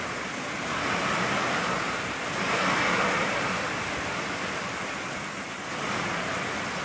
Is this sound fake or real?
real